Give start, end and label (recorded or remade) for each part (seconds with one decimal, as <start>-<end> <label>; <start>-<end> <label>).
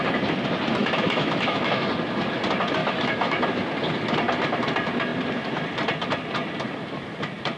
0.0-0.8 recorded; 0.8-1.9 remade; 1.9-2.8 recorded; 2.8-3.4 remade; 3.4-7.6 recorded